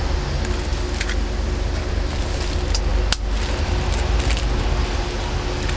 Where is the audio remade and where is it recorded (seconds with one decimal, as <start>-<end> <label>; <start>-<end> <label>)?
0.0-5.8 recorded

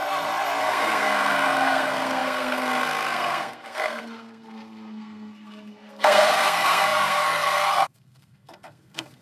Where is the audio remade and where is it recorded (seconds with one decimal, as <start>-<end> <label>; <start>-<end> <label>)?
0.0-0.6 recorded; 0.6-9.2 remade

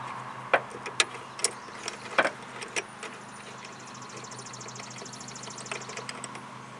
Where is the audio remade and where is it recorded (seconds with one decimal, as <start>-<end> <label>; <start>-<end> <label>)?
0.0-6.8 recorded

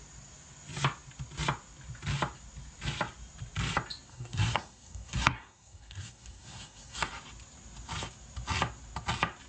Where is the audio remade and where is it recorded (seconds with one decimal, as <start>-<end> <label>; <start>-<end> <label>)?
0.0-4.1 recorded; 4.1-7.1 remade; 7.1-9.5 recorded

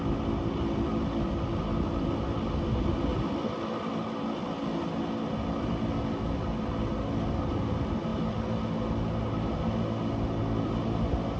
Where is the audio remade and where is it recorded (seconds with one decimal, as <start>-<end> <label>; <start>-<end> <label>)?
0.0-11.4 recorded

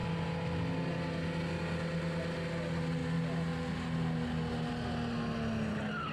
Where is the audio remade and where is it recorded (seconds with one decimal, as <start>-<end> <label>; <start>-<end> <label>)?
0.0-6.1 recorded

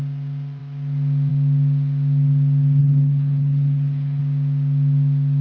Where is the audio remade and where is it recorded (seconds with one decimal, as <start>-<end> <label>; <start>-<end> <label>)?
0.0-2.8 recorded; 2.8-4.2 remade; 4.2-5.4 recorded